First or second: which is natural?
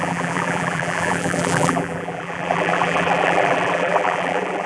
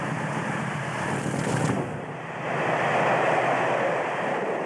second